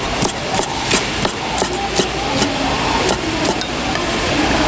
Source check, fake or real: real